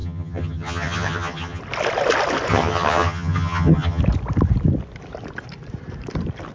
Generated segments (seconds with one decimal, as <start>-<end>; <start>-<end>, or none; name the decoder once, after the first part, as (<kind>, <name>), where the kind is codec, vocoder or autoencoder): 0.0-1.6 (vocoder, HiFi-GAN); 2.5-4.0